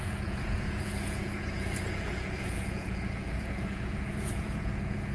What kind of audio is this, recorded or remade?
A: remade